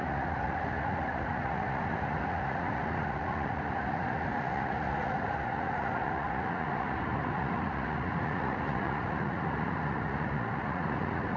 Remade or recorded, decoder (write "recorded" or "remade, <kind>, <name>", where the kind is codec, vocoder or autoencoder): remade, vocoder, Vocos